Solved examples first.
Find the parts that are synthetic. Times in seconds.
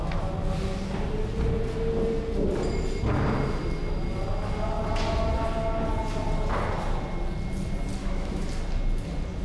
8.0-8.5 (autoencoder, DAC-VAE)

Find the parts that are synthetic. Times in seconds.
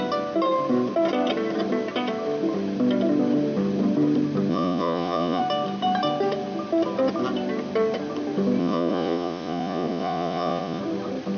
4.5-5.4 (vocoder, Vocos); 8.6-10.8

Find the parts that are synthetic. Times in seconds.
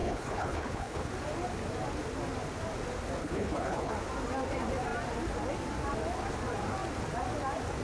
0.0-1.1 (codec, HILCodec); 3.2-3.9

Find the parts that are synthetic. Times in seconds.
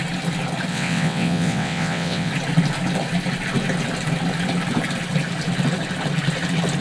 0.7-2.3 (vocoder, WaveNeXt)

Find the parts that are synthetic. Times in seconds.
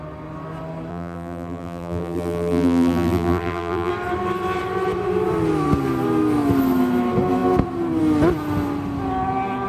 0.9-3.9 (vocoder, BigVGAN v2)